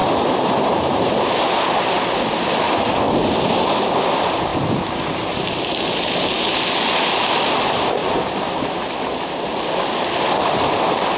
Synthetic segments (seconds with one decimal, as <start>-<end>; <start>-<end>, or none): 4.5-6.1; 8.0-9.5